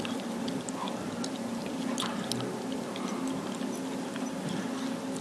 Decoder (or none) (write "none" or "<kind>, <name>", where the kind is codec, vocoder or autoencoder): none